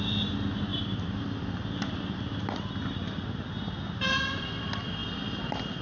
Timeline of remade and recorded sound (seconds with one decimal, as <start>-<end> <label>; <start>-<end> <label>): 0.0-5.8 recorded